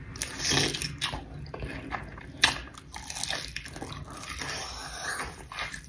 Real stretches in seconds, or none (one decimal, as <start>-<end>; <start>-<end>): 0.0-5.9